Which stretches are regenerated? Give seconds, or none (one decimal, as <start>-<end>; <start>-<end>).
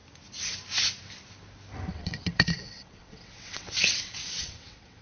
1.9-5.0